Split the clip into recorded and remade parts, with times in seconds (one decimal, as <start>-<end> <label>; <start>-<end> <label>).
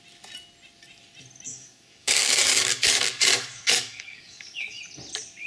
0.0-1.5 recorded; 1.5-4.8 remade; 4.8-5.5 recorded